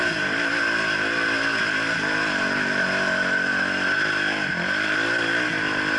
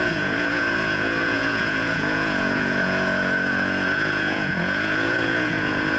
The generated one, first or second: second